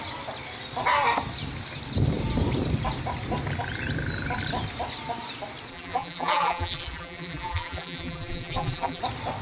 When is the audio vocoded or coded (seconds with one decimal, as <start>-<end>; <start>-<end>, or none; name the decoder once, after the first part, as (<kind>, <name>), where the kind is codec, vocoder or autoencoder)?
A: 5.7-9.0 (vocoder, BigVGAN v2)